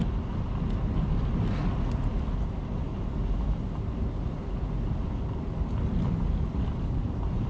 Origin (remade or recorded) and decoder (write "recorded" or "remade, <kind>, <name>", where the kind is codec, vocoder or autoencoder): recorded